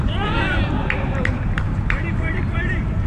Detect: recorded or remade remade